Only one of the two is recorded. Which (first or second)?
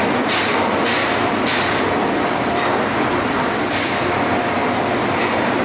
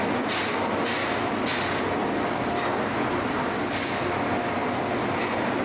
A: second